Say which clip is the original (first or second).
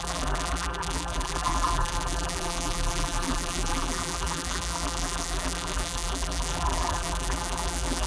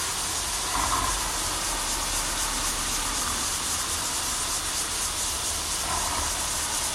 second